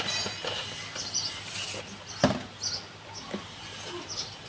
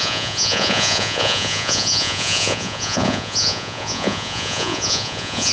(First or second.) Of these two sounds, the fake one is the second